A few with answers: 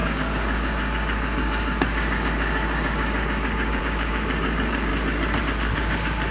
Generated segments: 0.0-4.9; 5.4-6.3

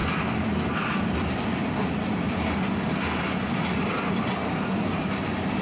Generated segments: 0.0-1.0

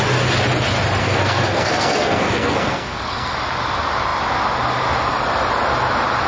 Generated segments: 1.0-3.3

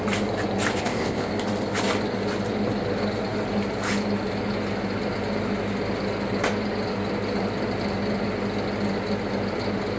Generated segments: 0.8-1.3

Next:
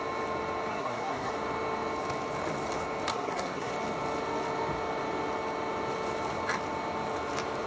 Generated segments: 0.7-1.3; 3.1-3.7

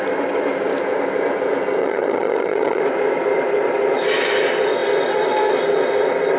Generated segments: 1.8-2.8

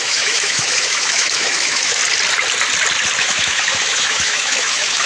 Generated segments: 0.0-2.0; 3.2-5.1